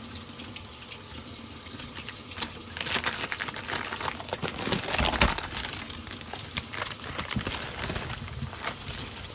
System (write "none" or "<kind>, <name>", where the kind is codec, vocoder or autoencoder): none